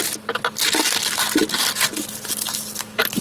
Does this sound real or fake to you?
real